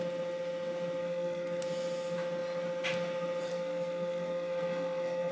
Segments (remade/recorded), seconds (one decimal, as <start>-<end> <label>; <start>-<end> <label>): 0.0-1.0 recorded; 1.0-1.6 remade; 1.6-3.5 recorded; 3.5-5.3 remade